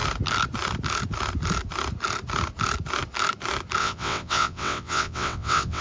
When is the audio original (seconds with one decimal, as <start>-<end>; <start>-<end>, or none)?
0.0-3.8